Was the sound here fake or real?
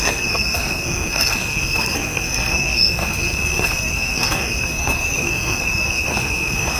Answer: fake